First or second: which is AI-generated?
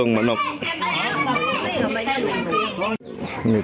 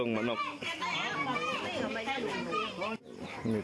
first